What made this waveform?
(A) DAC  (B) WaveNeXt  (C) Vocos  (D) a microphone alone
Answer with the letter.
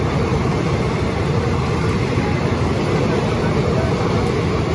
D